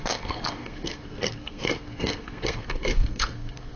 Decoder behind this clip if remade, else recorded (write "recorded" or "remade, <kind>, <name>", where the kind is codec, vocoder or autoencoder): remade, codec, SNAC